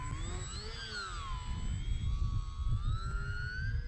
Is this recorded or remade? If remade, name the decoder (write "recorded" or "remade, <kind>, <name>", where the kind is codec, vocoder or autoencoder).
recorded